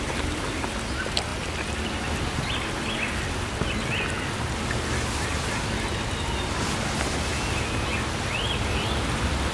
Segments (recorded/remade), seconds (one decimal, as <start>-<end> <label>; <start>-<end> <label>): 0.0-9.5 recorded